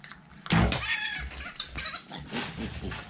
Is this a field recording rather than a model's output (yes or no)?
yes